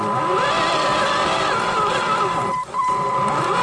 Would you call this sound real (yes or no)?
yes